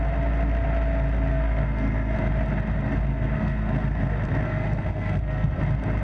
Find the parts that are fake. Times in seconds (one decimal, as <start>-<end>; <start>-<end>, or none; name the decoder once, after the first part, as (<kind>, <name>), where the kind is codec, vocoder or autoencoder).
1.3-2.3 (codec, SNAC); 3.1-5.6